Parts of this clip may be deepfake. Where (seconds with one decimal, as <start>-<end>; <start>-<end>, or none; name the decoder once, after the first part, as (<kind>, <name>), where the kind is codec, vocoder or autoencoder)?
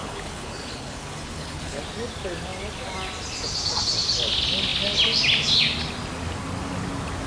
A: 0.0-1.8 (codec, HILCodec)